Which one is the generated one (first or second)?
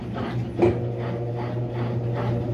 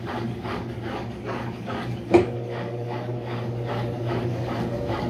second